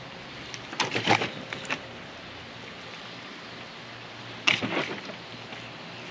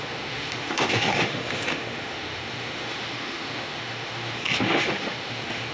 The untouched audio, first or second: first